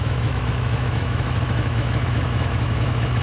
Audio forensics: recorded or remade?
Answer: remade